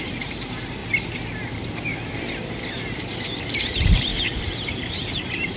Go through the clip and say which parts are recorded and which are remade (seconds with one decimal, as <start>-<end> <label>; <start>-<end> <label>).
0.0-0.8 remade; 0.8-3.6 recorded; 3.6-5.6 remade